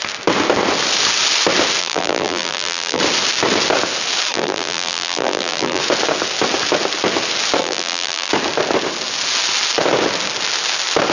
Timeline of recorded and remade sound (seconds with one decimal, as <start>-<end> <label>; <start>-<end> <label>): 0.0-1.8 recorded; 1.8-3.0 remade; 3.0-4.3 recorded; 4.3-5.8 remade; 5.8-7.6 recorded; 7.6-8.3 remade; 8.3-11.1 recorded